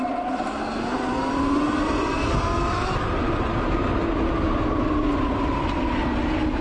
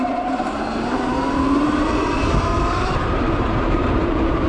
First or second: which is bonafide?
first